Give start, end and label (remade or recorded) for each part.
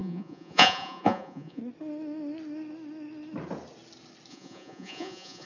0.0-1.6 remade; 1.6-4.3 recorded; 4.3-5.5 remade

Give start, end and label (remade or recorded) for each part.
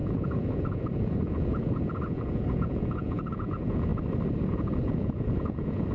0.0-3.9 remade; 3.9-4.5 recorded; 4.5-5.9 remade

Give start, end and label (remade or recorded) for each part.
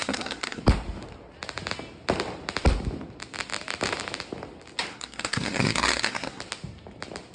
0.0-0.6 remade; 0.6-4.9 recorded; 4.9-6.4 remade; 6.4-7.3 recorded